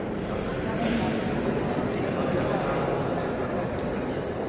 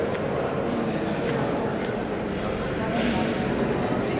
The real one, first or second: second